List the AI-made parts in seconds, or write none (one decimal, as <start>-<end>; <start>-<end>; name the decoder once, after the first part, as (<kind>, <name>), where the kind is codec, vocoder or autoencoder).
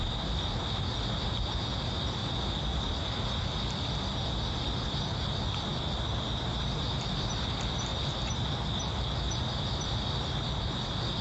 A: none